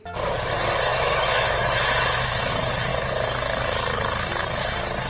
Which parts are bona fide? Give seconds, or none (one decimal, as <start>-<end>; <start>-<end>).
0.0-0.9; 2.5-5.1